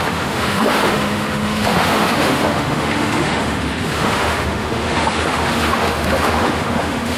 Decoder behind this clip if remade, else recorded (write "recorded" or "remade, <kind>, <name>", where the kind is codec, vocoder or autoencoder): remade, autoencoder, DAC-VAE